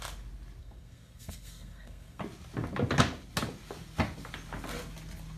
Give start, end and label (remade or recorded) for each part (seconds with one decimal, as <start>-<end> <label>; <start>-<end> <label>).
0.0-0.6 recorded; 0.6-2.2 remade; 2.2-5.4 recorded